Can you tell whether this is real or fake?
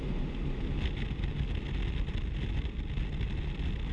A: real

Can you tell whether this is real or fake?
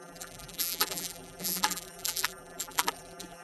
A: fake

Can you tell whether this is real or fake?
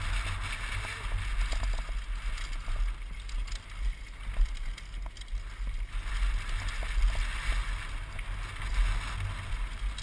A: real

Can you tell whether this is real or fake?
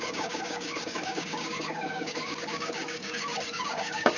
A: fake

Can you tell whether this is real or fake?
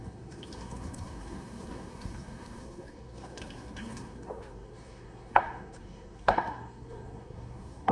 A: fake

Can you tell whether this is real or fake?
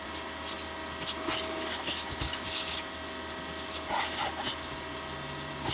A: real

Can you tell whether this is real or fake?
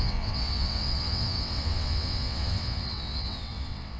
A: fake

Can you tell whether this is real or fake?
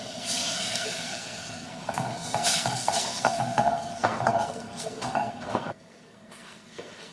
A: fake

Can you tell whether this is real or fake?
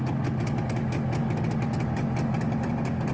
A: real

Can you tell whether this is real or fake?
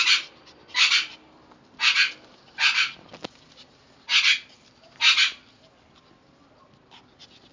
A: real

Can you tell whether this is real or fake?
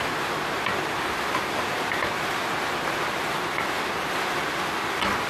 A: real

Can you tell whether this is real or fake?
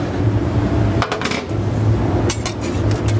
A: real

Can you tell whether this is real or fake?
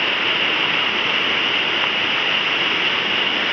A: real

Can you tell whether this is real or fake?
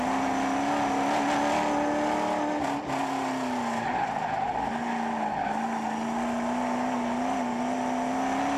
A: real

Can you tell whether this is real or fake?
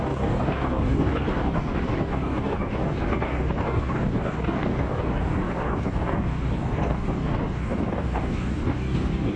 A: fake